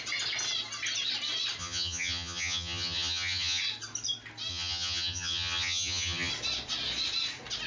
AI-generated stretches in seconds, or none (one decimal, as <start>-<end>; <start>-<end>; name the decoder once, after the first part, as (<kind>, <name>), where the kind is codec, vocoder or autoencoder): 1.6-3.6 (vocoder, HiFi-GAN); 4.5-6.3